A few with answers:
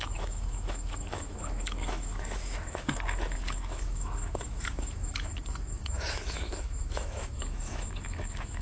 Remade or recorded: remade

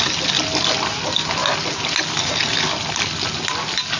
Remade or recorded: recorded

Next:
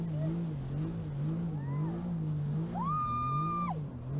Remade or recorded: recorded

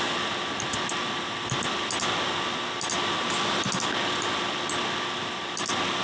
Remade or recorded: recorded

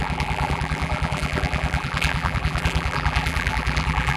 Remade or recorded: remade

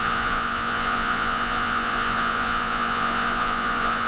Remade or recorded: remade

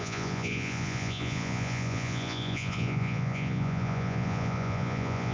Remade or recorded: remade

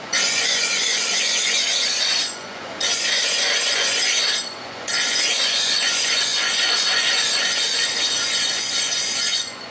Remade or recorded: remade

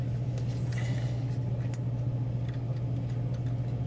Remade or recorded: recorded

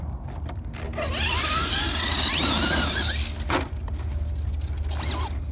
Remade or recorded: recorded